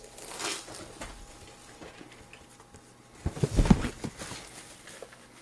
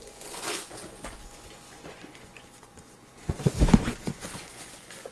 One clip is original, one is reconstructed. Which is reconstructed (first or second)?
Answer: second